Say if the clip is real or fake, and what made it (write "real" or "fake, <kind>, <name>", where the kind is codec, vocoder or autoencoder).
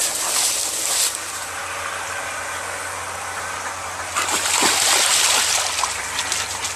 real